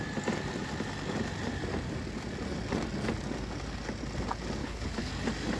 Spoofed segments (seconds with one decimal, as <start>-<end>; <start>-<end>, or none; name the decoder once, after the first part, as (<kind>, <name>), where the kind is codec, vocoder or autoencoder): 4.6-5.1 (codec, HILCodec)